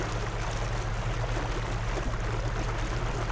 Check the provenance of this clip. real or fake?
real